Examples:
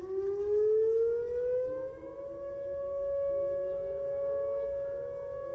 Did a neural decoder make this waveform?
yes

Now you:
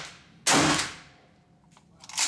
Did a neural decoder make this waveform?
no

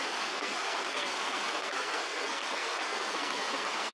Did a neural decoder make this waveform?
yes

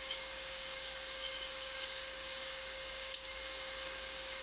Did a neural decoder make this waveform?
yes